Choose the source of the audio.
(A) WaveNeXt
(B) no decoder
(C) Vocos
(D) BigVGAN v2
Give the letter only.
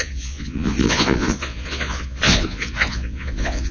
C